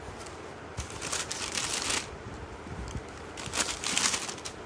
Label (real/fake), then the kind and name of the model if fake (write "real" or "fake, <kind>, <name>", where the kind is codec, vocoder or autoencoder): real